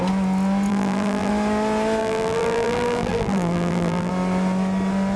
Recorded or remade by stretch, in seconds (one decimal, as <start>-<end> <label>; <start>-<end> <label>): 0.0-0.7 recorded; 0.7-1.3 remade; 1.3-2.0 recorded; 2.0-4.1 remade; 4.1-5.2 recorded